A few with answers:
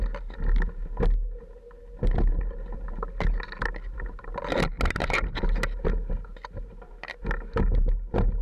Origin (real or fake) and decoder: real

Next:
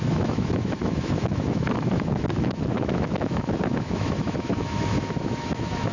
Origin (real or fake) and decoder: fake, autoencoder, DAC-VAE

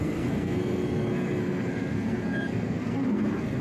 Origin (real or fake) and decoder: fake, codec, SNAC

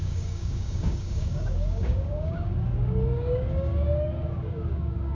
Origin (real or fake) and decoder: fake, codec, DAC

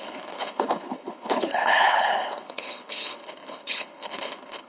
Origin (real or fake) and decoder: fake, codec, HILCodec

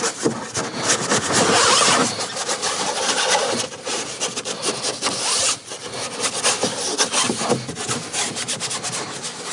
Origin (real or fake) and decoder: real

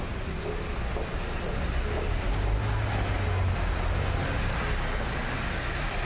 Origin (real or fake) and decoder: real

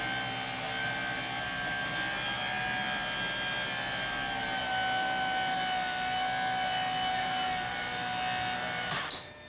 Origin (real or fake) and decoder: real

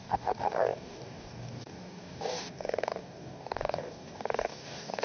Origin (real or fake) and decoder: fake, codec, DAC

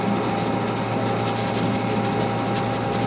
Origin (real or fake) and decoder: real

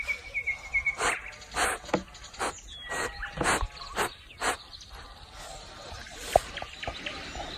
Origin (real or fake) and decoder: real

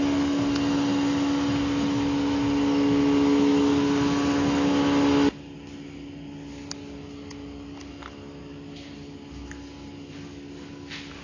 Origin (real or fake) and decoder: real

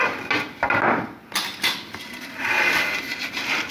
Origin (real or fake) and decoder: real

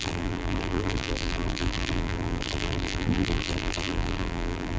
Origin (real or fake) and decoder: fake, vocoder, BigVGAN v2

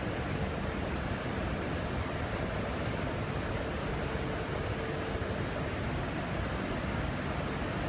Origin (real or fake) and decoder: real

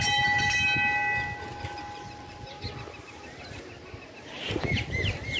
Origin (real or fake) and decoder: real